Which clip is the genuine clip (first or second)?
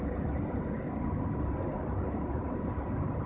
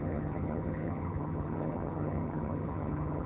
first